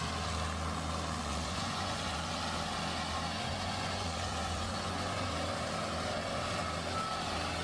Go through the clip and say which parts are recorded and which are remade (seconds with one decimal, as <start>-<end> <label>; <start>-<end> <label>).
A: 0.0-1.2 recorded; 1.2-2.3 remade; 2.3-3.5 recorded; 3.5-5.3 remade; 5.3-7.6 recorded